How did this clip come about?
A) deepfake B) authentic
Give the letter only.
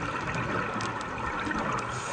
B